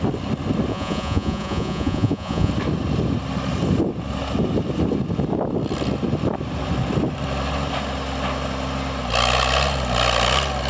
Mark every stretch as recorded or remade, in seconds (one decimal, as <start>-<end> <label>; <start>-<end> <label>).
0.0-0.7 recorded; 0.7-2.5 remade; 2.5-10.7 recorded